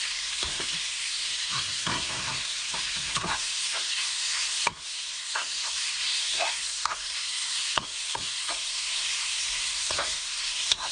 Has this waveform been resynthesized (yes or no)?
yes